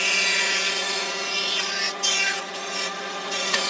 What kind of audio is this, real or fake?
fake